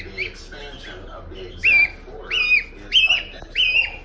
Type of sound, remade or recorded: recorded